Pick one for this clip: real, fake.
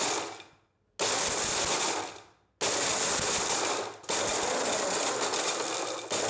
real